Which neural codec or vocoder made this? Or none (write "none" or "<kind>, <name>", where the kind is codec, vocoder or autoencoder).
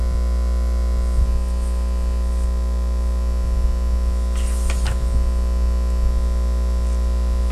none